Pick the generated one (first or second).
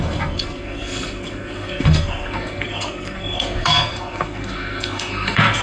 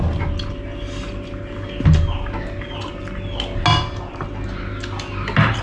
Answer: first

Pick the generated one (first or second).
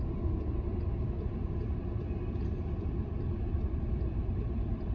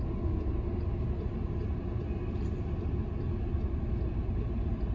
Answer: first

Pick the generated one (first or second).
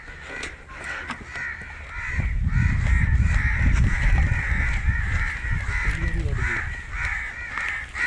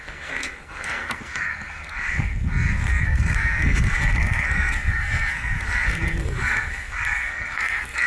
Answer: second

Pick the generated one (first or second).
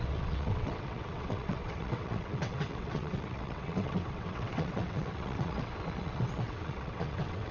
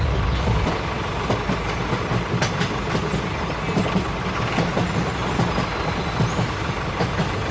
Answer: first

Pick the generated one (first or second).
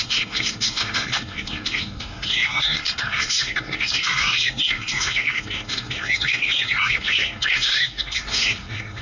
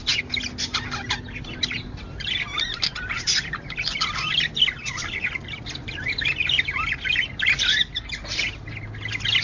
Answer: first